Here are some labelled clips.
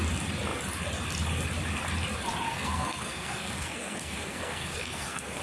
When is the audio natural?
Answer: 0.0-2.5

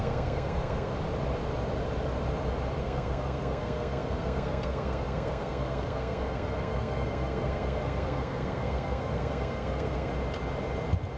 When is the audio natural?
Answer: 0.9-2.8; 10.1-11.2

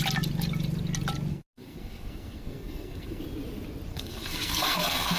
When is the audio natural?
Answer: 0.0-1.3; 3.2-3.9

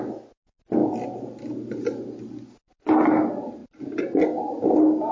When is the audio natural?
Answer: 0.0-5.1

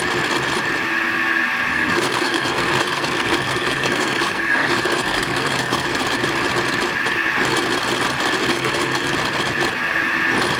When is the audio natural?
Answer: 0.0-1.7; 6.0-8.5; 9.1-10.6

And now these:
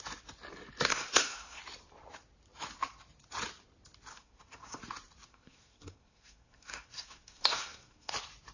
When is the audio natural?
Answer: 0.0-0.9; 1.6-4.1; 4.8-5.3; 8.1-8.5